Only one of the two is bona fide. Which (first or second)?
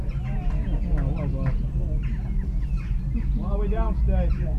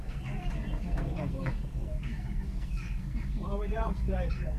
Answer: first